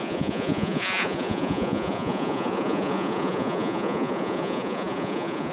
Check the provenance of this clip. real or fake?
fake